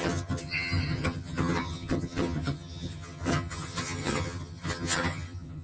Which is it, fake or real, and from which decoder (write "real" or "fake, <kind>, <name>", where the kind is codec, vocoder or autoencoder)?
fake, vocoder, HiFi-GAN